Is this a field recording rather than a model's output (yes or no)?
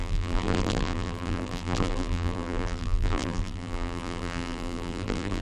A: no